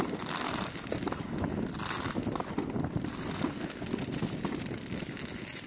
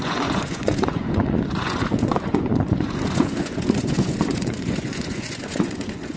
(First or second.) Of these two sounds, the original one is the first